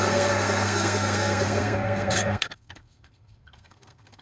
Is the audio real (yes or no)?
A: no